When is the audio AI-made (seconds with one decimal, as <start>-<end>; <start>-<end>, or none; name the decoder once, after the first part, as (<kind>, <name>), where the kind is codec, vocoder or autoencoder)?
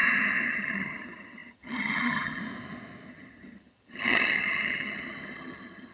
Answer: 0.5-2.4 (vocoder, HiFi-GAN); 3.1-5.9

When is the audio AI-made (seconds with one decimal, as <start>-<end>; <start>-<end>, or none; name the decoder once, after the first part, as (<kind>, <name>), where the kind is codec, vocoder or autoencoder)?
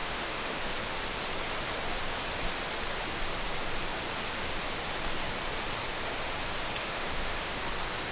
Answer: 0.0-0.7 (autoencoder, DAC-VAE); 6.8-7.6